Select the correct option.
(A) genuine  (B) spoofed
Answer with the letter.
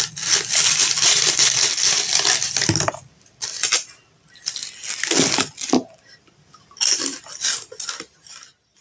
A